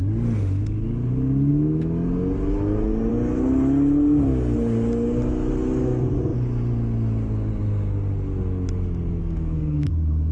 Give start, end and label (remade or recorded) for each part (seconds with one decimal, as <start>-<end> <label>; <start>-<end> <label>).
0.0-9.2 recorded; 9.2-9.9 remade; 9.9-10.3 recorded